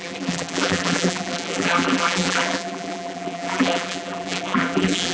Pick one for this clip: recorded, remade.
remade